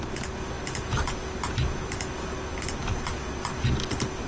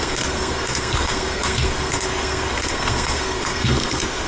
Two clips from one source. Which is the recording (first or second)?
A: first